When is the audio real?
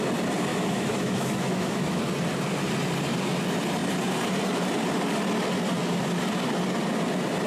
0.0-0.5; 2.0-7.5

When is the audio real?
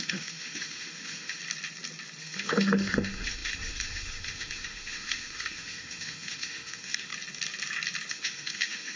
1.4-2.2; 7.1-8.1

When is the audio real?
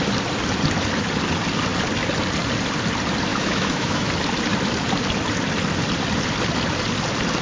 0.0-3.3; 4.1-7.4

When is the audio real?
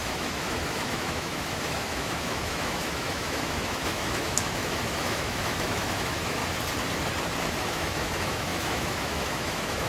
6.4-7.4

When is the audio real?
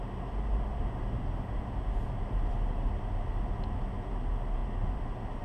0.0-5.4